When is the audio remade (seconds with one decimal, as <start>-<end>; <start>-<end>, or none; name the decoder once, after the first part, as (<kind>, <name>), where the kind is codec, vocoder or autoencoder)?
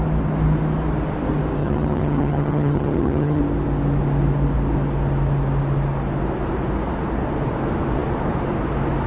1.6-3.4 (vocoder, HiFi-GAN)